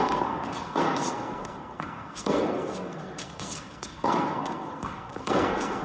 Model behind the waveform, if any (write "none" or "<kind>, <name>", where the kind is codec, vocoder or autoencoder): codec, SNAC